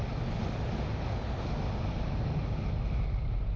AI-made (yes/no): no